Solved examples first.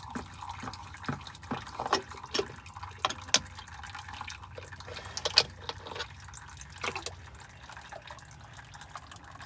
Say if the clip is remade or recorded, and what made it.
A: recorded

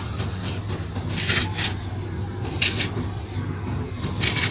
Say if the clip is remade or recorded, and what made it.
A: recorded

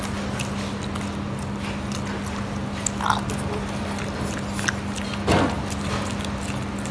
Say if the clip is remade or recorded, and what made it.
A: recorded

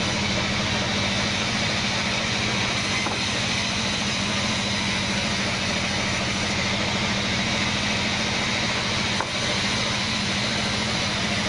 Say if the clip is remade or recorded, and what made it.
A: remade, vocoder, Vocos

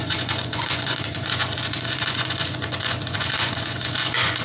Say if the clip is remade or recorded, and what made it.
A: remade, vocoder, Vocos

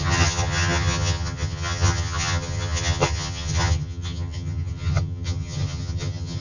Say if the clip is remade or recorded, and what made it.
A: remade, vocoder, HiFi-GAN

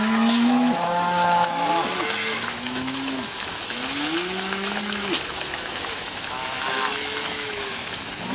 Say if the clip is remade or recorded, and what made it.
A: remade, autoencoder, DAC-VAE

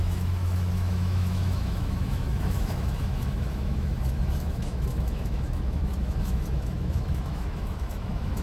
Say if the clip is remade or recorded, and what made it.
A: remade, autoencoder, DAC-VAE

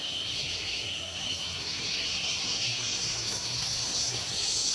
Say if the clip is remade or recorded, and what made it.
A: remade, codec, SNAC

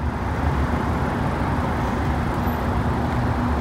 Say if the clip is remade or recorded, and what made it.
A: recorded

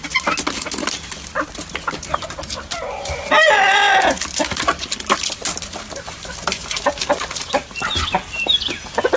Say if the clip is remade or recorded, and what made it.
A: recorded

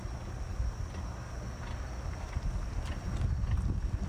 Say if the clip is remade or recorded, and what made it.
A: recorded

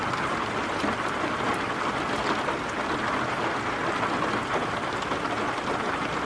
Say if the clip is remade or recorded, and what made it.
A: recorded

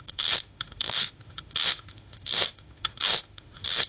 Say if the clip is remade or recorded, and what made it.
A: remade, autoencoder, DAC-VAE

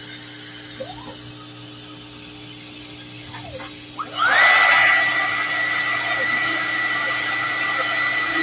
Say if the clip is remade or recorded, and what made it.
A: recorded